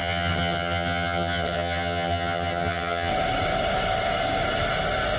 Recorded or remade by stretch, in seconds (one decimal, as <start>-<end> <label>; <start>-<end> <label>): 0.0-3.1 remade; 3.1-5.2 recorded